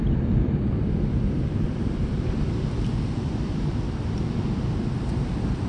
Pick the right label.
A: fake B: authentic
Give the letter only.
B